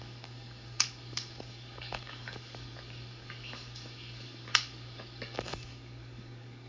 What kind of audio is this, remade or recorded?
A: remade